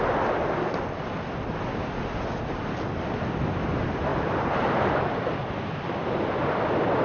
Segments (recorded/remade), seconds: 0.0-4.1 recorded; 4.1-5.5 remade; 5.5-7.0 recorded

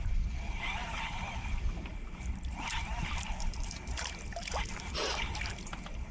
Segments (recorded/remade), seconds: 0.0-0.8 recorded; 0.8-4.5 remade; 4.5-6.1 recorded